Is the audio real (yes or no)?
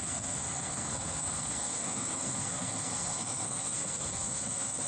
no